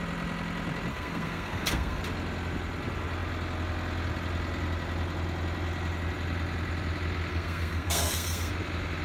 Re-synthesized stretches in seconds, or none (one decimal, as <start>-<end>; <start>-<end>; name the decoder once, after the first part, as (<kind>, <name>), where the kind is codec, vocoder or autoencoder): 0.9-2.0 (codec, SNAC); 7.3-8.5